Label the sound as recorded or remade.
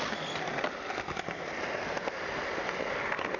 recorded